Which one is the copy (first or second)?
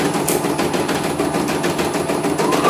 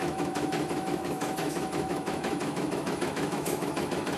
second